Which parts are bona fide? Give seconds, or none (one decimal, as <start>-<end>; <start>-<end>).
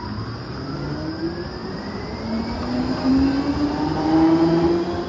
0.0-5.1